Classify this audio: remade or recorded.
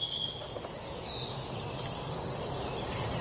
recorded